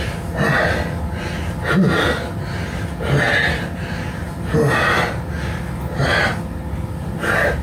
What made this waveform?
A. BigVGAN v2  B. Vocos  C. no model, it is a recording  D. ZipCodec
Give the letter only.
C